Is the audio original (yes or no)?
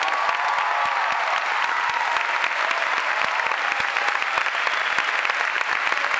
yes